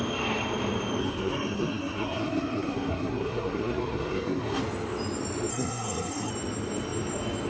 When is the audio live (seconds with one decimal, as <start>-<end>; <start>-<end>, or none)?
0.0-1.0; 4.6-5.5; 6.3-7.5